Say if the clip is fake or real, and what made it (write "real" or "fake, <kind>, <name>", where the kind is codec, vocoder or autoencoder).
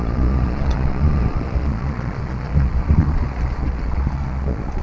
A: fake, vocoder, Vocos